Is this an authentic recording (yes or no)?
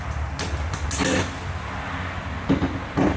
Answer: yes